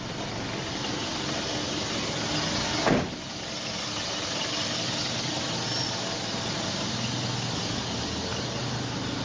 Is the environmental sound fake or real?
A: real